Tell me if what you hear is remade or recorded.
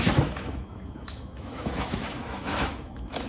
remade